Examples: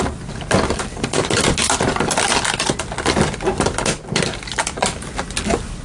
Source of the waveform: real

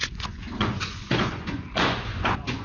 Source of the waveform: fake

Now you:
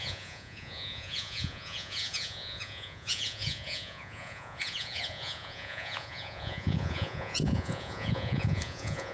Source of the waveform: fake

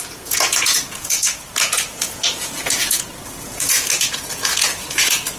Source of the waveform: fake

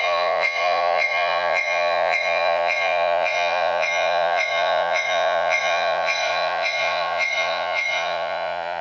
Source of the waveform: fake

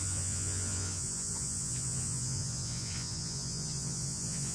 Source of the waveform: fake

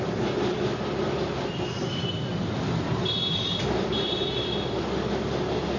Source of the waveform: real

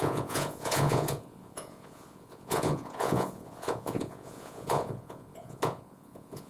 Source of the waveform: fake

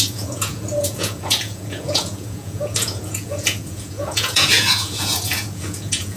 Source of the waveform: fake